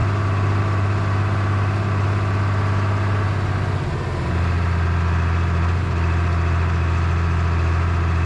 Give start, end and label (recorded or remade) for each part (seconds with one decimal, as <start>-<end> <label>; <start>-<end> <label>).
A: 0.0-8.3 recorded